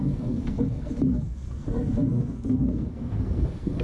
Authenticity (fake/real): fake